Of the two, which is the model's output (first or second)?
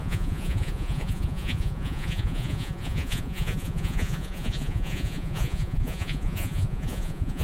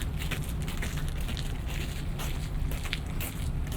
first